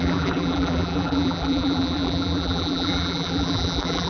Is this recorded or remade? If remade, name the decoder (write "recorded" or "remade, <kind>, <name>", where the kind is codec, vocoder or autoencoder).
remade, vocoder, BigVGAN v2